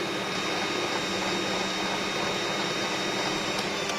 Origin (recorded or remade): recorded